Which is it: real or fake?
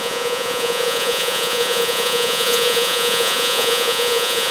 fake